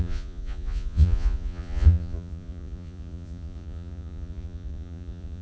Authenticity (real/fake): fake